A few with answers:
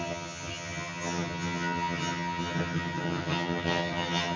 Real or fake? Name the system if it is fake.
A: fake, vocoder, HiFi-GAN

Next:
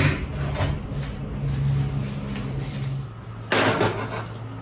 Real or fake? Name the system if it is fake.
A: real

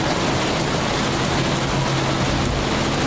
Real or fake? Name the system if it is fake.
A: real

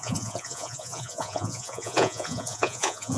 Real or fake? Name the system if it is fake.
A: fake, vocoder, Vocos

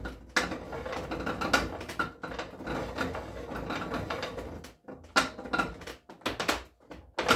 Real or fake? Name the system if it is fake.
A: real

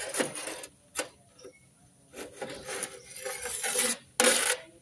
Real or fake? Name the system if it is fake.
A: real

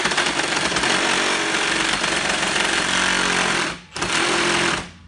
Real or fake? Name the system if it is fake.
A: real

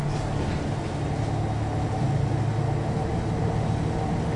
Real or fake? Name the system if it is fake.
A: real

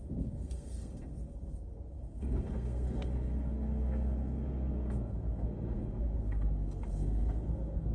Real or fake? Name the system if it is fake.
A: fake, codec, SNAC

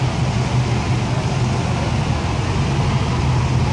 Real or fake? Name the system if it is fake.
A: real